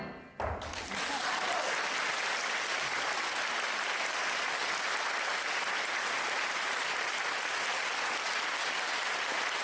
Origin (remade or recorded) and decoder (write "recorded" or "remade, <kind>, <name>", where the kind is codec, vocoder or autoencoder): recorded